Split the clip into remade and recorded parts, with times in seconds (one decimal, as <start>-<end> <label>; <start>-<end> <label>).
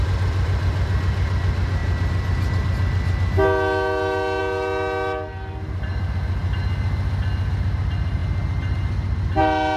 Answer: 0.0-9.8 recorded